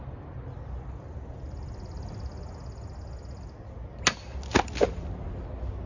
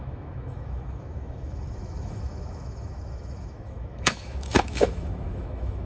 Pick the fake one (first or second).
second